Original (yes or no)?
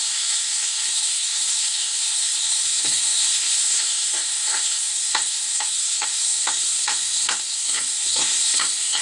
no